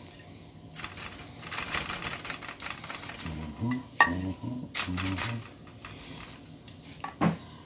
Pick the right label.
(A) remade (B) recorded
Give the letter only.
B